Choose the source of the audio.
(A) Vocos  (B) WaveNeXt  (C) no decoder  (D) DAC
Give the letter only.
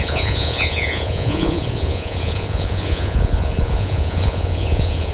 A